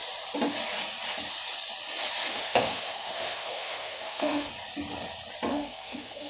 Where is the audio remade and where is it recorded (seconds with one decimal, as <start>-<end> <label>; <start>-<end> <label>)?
0.0-2.3 recorded; 2.3-4.5 remade; 4.5-5.5 recorded; 5.5-6.3 remade